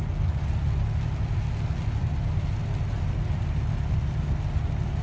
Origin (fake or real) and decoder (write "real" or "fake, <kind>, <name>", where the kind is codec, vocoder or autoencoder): real